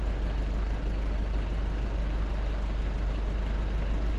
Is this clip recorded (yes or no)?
yes